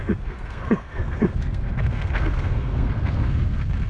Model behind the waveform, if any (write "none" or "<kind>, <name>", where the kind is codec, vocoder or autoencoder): codec, SNAC